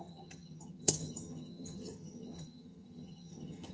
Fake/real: fake